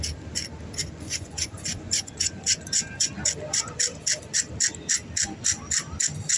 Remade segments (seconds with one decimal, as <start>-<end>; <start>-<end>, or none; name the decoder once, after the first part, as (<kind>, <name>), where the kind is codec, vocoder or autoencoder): 0.8-3.1 (vocoder, Vocos)